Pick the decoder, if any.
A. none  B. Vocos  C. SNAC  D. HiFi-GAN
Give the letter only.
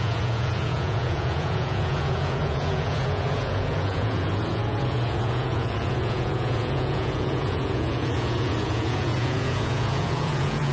B